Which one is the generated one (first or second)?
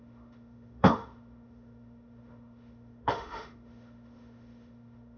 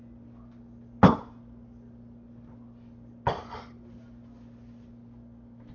first